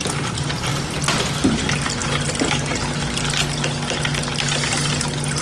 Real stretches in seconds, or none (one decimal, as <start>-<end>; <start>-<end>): 0.0-5.4